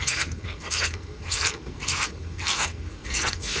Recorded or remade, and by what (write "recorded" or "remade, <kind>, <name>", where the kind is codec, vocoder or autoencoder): remade, codec, SNAC